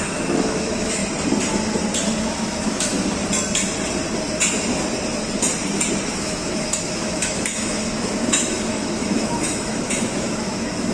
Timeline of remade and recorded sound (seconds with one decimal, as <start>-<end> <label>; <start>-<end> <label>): 0.0-1.0 remade; 1.0-2.2 recorded; 2.2-2.9 remade; 2.9-6.1 recorded; 6.1-10.9 remade